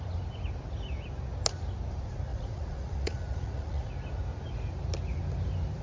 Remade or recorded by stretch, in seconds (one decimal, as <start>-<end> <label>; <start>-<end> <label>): 0.0-2.3 recorded; 2.3-3.9 remade; 3.9-5.8 recorded